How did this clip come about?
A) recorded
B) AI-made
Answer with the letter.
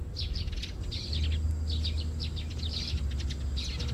A